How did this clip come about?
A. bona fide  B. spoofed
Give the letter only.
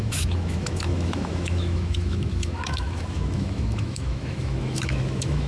B